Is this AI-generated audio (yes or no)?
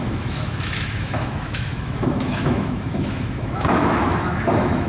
yes